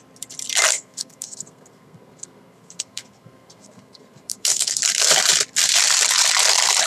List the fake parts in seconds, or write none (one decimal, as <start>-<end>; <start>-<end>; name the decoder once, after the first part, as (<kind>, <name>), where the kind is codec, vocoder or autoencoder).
0.7-4.8 (codec, SNAC)